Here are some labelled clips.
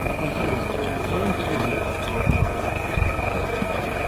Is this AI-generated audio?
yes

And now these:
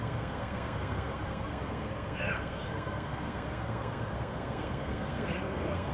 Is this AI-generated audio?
yes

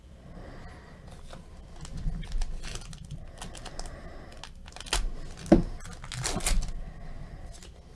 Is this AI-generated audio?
no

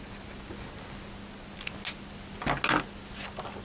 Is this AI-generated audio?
no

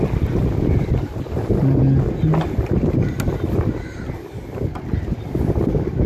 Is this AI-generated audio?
no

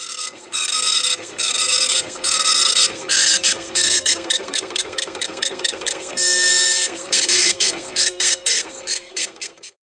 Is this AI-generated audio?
yes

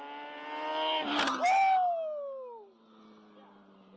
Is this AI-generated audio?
no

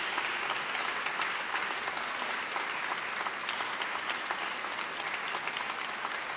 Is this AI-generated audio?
no